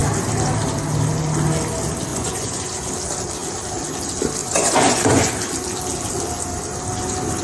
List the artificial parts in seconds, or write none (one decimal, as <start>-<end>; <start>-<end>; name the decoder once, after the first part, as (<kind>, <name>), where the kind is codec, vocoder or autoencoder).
2.1-2.9 (vocoder, Vocos); 4.4-5.3